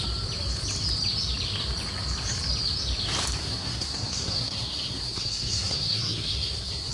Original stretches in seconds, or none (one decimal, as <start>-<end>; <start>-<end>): 0.0-3.4